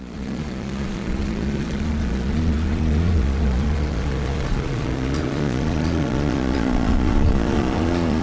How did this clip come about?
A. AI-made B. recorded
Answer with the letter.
A